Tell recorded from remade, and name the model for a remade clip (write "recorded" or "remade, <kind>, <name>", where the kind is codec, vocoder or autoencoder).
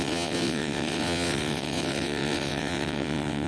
remade, vocoder, WaveNeXt